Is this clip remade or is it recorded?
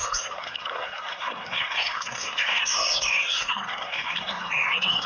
remade